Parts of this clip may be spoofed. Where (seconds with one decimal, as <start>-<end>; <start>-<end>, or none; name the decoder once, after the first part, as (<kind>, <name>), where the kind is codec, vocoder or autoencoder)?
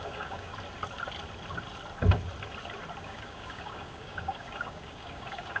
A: 0.0-0.5 (codec, DAC); 3.0-5.6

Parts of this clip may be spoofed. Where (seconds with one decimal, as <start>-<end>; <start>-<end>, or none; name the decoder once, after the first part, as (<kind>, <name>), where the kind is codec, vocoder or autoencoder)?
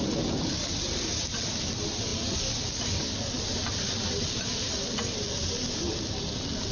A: none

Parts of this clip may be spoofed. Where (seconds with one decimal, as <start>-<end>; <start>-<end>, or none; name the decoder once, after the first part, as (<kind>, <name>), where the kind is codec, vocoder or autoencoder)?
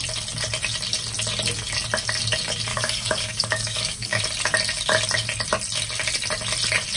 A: 2.7-4.2 (codec, DAC)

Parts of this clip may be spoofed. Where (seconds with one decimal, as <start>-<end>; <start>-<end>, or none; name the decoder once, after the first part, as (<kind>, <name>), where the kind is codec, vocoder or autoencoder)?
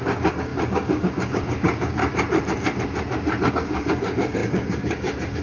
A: 0.0-2.0 (codec, DAC); 3.5-5.4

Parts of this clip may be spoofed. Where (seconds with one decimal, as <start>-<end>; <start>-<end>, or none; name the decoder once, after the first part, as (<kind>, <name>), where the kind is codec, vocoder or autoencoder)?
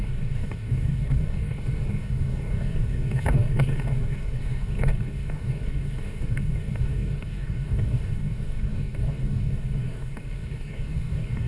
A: 0.0-11.5 (codec, DAC)